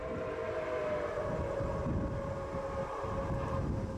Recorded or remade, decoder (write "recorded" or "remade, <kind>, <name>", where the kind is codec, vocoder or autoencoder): recorded